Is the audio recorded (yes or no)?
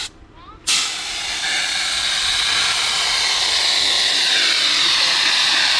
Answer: yes